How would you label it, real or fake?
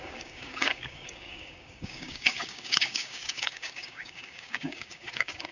fake